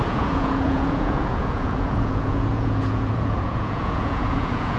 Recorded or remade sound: remade